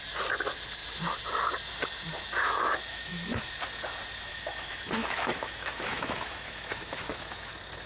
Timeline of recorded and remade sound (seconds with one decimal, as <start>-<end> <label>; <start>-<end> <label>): 0.0-2.9 recorded; 2.9-3.5 remade; 3.5-4.3 recorded; 4.3-7.5 remade; 7.5-7.9 recorded